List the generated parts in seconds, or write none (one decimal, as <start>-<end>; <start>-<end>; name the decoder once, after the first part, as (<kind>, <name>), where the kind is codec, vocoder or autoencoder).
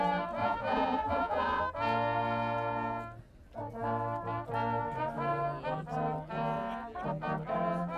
0.4-1.6 (vocoder, Vocos)